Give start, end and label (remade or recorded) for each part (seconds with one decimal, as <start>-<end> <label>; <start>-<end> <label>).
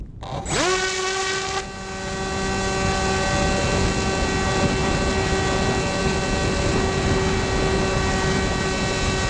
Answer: 0.0-9.3 recorded